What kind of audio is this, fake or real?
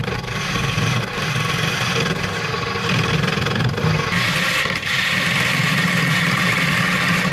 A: real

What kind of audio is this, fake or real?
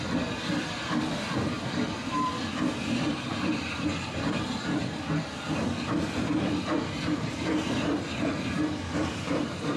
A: fake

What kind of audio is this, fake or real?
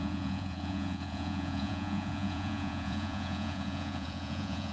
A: fake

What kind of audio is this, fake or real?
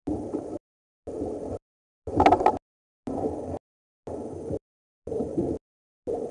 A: real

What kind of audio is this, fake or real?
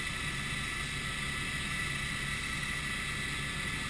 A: real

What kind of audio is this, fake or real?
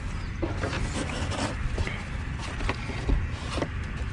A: real